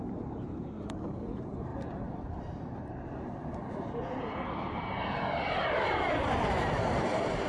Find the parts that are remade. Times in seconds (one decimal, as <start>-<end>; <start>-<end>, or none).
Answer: 0.0-7.5